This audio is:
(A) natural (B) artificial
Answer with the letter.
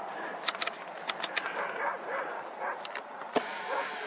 A